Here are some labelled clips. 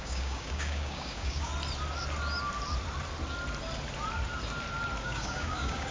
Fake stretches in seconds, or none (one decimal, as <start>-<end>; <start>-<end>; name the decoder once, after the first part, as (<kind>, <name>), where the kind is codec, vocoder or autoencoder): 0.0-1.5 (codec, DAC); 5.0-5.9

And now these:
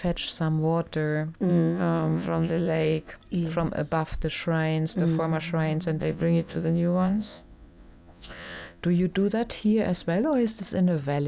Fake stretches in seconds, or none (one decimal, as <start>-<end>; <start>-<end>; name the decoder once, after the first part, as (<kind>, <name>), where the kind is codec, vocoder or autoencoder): 1.5-3.1 (vocoder, Vocos); 6.0-8.8

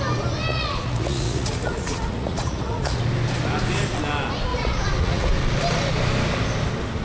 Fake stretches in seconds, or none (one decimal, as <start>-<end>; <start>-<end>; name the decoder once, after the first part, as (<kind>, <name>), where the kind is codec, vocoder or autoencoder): 0.5-3.0 (vocoder, Vocos); 4.5-5.3

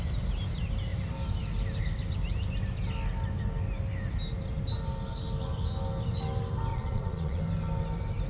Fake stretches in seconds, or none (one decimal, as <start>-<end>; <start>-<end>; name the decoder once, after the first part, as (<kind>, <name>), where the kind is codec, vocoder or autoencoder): 6.7-7.4 (vocoder, Vocos)

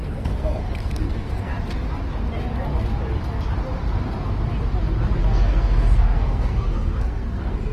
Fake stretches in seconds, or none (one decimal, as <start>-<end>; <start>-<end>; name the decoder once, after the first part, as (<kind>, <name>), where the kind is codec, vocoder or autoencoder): 0.0-1.5 (codec, SNAC); 5.2-7.7